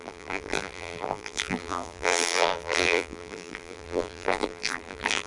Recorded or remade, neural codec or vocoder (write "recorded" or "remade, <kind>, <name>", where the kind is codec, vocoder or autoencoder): remade, vocoder, BigVGAN v2